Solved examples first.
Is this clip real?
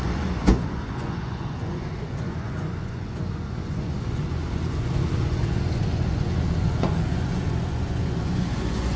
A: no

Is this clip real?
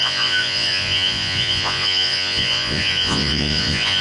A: no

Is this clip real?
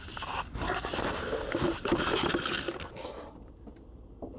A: yes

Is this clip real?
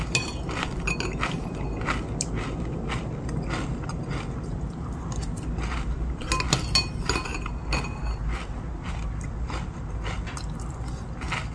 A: yes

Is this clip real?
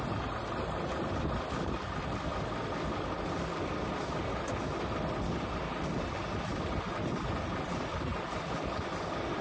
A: yes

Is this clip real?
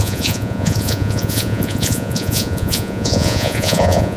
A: no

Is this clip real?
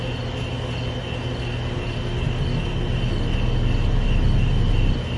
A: yes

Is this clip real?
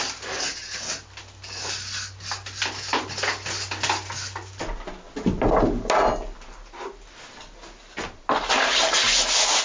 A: yes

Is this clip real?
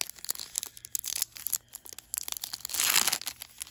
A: yes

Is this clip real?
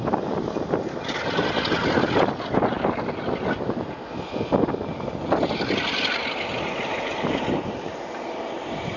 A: yes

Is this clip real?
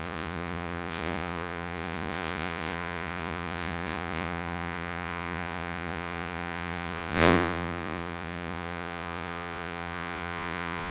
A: no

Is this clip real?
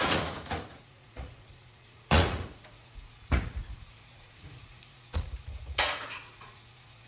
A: no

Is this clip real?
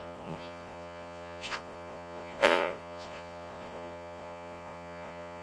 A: no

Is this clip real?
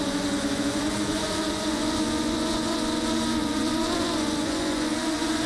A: no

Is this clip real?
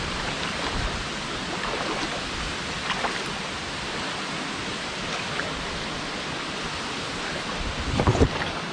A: yes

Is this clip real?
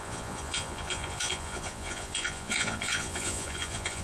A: no